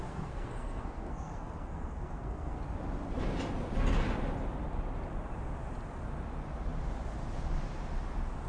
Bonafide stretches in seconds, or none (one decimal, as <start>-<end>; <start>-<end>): 2.6-8.5